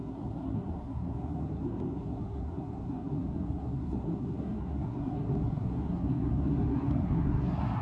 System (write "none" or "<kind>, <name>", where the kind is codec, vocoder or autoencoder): codec, SNAC